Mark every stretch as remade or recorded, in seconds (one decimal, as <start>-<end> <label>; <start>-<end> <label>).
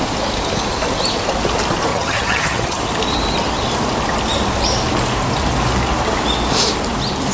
0.0-1.9 recorded; 1.9-2.8 remade; 2.8-7.3 recorded